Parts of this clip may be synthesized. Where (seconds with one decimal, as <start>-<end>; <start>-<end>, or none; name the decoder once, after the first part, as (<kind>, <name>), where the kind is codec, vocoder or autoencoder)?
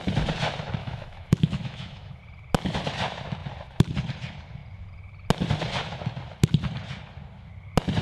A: 0.8-2.2 (autoencoder, DAC-VAE)